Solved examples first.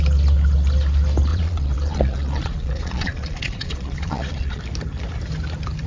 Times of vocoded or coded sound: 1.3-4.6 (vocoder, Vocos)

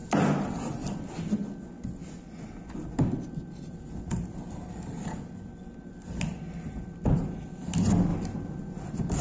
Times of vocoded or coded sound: 8.1-9.2 (vocoder, BigVGAN v2)

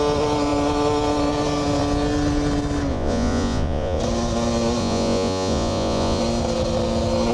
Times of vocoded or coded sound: 2.9-4.0 (vocoder, Vocos); 4.8-6.2

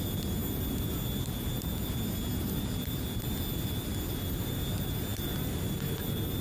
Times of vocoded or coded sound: none

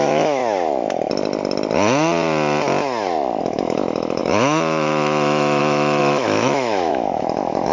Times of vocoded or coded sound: 0.0-0.4 (autoencoder, DAC-VAE); 3.4-7.7

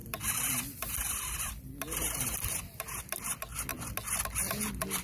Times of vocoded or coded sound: none

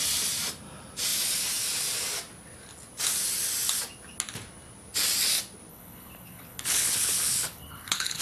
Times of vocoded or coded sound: 5.7-8.2 (codec, HILCodec)

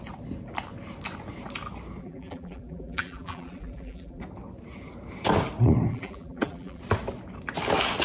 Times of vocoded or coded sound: 2.0-4.2 (vocoder, BigVGAN v2); 5.9-6.8